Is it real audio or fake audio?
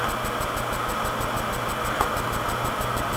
real